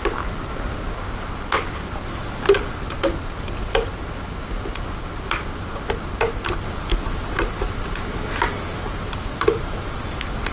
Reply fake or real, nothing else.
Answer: real